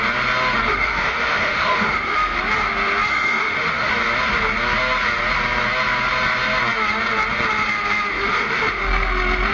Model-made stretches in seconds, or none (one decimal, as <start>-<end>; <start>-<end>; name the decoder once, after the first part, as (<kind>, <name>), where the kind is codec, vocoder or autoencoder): 0.7-2.4 (autoencoder, DAC-VAE); 3.1-3.9; 8.1-8.8